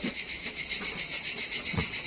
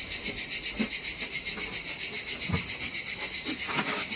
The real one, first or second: second